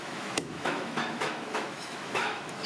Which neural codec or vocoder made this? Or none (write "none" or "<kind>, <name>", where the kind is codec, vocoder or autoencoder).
autoencoder, DAC-VAE